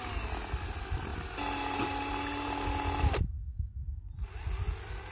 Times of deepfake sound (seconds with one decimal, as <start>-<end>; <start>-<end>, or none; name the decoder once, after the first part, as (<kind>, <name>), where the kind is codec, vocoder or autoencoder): none